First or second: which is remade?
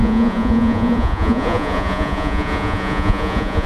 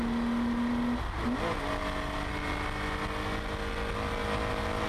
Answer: first